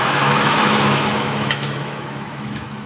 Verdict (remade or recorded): remade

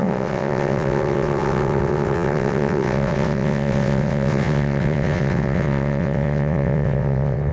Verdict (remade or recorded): remade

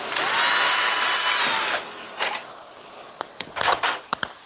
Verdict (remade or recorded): recorded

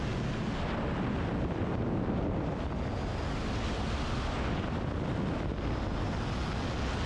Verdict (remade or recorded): recorded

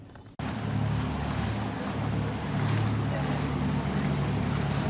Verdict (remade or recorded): recorded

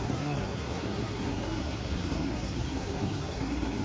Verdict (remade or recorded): remade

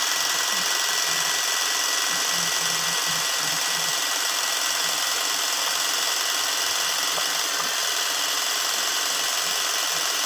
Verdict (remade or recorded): recorded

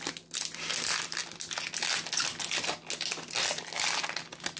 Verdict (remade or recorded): recorded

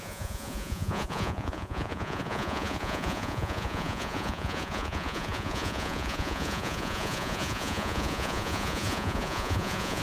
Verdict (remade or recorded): remade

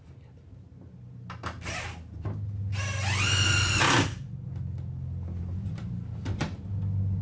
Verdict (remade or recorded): recorded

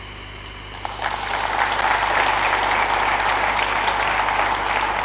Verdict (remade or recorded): recorded